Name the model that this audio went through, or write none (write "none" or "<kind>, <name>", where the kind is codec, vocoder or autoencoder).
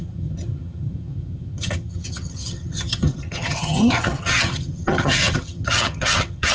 vocoder, HiFi-GAN